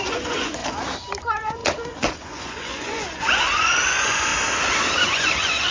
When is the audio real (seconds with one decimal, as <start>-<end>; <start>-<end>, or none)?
0.6-1.2; 4.3-4.9